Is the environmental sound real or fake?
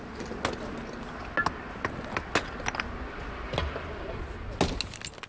real